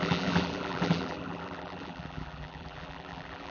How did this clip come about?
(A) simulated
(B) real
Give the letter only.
A